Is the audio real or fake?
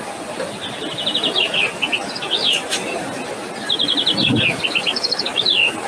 real